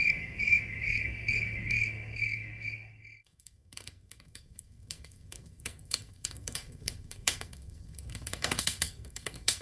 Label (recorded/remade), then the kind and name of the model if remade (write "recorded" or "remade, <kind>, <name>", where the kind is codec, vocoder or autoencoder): remade, codec, SNAC